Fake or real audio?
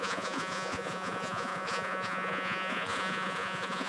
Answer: fake